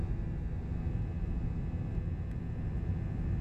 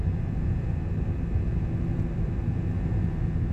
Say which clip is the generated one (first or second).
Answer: second